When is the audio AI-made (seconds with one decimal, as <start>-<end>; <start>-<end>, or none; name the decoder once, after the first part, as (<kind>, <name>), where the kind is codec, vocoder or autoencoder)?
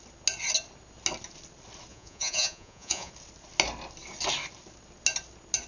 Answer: 1.9-3.1 (vocoder, Vocos)